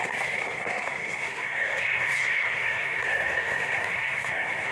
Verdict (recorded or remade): remade